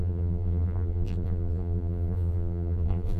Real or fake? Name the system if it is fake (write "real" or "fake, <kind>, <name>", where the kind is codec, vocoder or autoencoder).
fake, vocoder, BigVGAN v2